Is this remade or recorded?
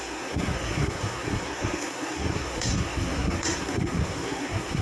remade